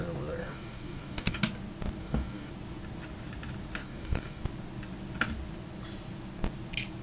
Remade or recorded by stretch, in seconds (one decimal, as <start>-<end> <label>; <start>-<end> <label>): 0.0-0.4 recorded; 0.4-1.4 remade; 1.4-2.0 recorded; 2.0-2.5 remade; 2.5-3.8 recorded; 3.8-4.4 remade; 4.4-7.0 recorded